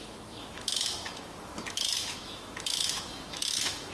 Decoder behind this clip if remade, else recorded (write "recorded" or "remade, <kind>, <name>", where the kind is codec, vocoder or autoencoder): remade, autoencoder, DAC-VAE